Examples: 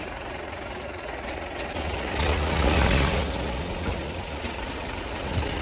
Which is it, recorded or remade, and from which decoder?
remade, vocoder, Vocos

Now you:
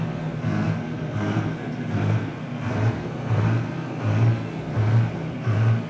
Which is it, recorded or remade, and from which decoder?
remade, codec, SNAC